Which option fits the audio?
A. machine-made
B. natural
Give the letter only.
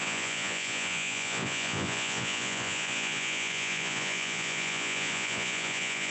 A